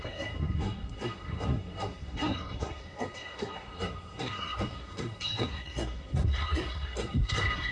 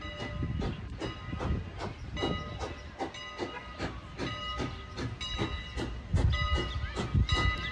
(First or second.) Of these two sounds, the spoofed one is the first